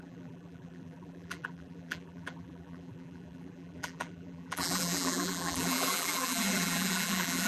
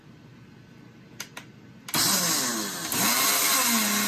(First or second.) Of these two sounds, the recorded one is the second